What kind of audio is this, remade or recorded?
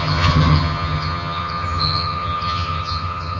remade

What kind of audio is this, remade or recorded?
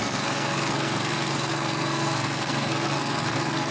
remade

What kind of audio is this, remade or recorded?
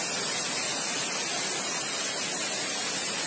recorded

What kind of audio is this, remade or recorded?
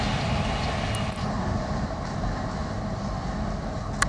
recorded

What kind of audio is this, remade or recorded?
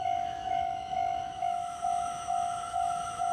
remade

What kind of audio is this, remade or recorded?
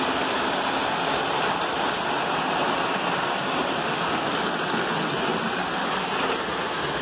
recorded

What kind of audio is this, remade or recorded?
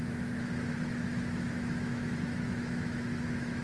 remade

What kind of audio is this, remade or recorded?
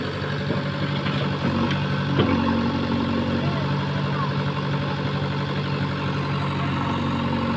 recorded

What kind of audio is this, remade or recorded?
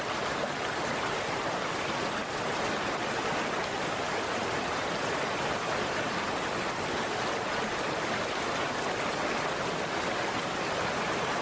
recorded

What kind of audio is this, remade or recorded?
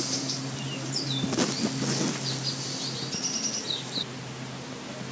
recorded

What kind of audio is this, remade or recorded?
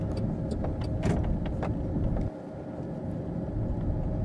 recorded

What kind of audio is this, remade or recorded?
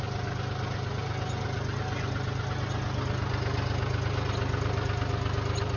recorded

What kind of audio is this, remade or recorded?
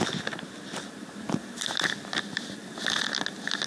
recorded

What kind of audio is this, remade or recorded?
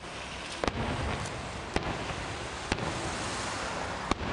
recorded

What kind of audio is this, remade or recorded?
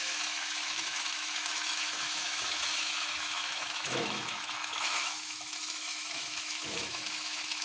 remade